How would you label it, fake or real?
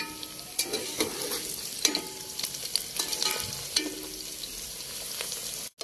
real